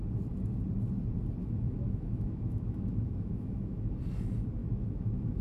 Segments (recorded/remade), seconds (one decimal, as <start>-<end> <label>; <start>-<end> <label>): 0.0-1.4 recorded; 1.4-3.9 remade; 3.9-4.6 recorded; 4.6-5.4 remade